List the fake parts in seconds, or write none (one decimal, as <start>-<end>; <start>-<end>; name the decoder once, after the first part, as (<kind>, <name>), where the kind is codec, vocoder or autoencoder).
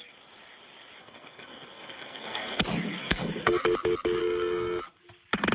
1.0-2.6 (codec, SNAC); 3.0-3.6; 4.2-4.8